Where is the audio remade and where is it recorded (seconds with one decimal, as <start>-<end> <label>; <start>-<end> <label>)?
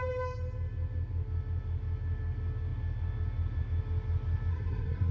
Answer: 0.0-4.5 recorded; 4.5-5.1 remade